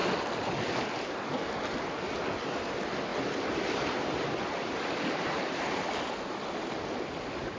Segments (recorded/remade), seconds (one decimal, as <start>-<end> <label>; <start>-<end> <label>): 0.0-7.6 recorded